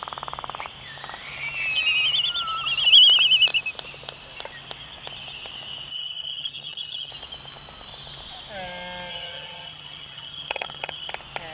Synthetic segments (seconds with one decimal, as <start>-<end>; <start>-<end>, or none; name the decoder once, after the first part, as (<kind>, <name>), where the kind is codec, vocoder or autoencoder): 5.9-7.1 (vocoder, HiFi-GAN); 9.1-11.1